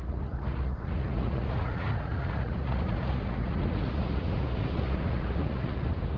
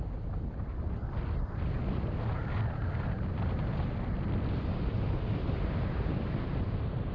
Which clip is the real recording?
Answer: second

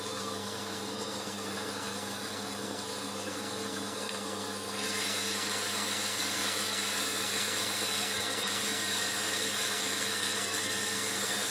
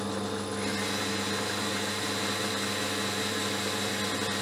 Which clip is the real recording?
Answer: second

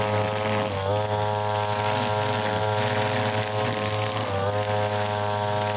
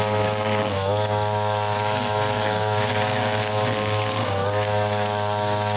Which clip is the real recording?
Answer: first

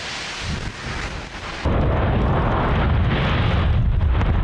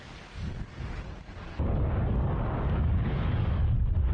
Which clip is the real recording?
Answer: first